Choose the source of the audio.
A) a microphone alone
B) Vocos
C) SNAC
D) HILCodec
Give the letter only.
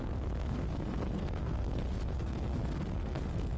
C